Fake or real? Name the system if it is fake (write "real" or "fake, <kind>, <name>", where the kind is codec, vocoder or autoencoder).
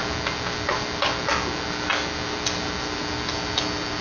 real